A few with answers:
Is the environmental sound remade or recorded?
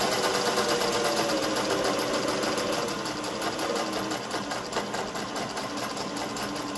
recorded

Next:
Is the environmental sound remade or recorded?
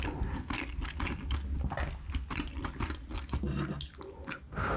recorded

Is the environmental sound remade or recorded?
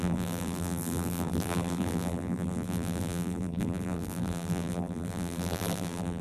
remade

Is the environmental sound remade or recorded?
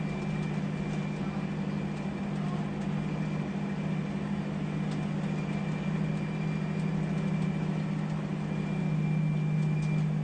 recorded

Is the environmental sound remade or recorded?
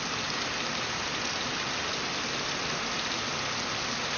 recorded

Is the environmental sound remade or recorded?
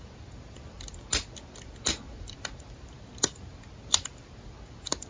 recorded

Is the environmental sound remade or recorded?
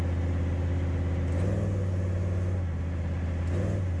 recorded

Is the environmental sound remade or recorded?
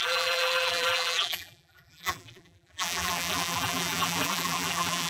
remade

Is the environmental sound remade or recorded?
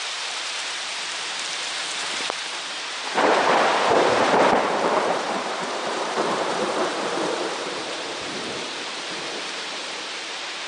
remade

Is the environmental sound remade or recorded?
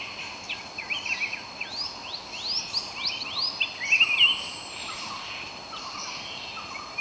recorded